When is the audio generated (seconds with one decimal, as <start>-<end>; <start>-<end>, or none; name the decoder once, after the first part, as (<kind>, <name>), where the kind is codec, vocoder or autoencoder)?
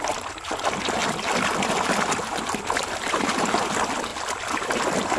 none